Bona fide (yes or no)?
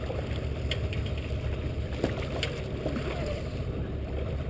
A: yes